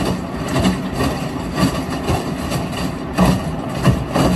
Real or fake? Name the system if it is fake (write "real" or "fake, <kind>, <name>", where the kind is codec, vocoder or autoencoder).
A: real